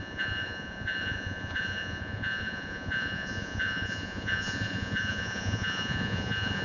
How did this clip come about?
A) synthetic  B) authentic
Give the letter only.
A